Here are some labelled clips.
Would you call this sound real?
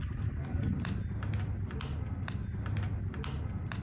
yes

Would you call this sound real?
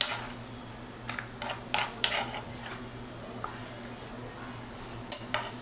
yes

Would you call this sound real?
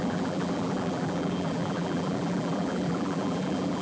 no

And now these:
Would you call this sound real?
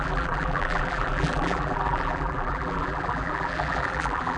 no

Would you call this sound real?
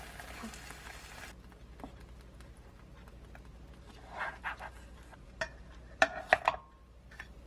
yes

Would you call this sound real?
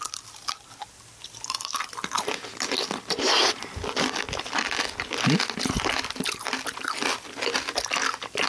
yes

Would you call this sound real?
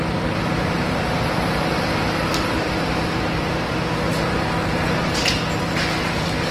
no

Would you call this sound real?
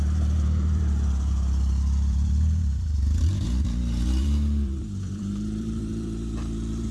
no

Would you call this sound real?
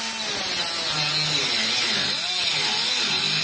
yes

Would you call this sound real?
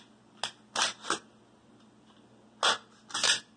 yes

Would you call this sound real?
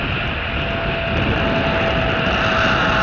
yes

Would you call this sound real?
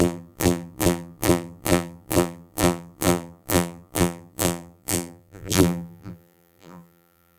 no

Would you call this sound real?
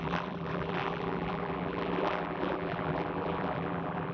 no